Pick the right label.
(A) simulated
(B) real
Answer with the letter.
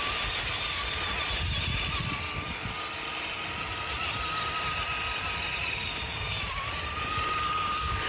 B